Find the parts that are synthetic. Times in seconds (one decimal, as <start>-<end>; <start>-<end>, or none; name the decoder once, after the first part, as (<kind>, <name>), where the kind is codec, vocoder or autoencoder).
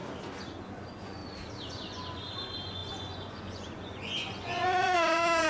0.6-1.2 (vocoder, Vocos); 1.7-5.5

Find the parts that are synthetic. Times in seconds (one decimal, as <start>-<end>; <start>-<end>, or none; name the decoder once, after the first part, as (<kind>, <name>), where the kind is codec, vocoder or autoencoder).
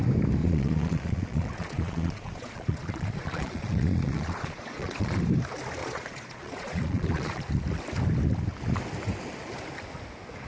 0.4-5.2 (vocoder, Vocos); 5.8-7.5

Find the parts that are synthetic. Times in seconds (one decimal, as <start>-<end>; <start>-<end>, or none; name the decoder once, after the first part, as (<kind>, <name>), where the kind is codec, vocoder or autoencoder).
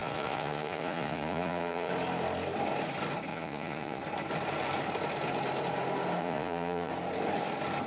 0.0-1.9 (vocoder, Vocos); 3.3-4.0; 6.2-6.9